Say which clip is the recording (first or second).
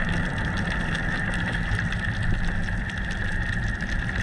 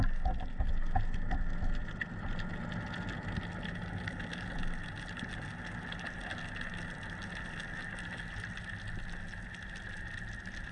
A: second